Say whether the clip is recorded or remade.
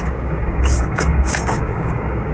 remade